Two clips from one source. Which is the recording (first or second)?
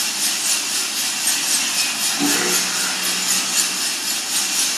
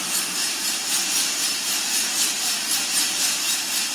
first